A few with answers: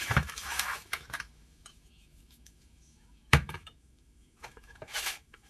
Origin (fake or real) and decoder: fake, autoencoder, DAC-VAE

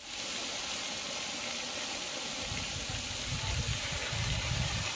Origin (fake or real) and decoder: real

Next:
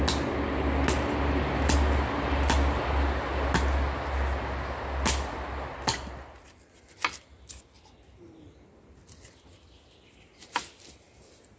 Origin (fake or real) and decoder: real